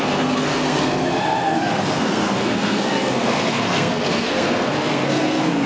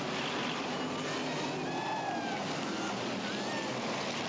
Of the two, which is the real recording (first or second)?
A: second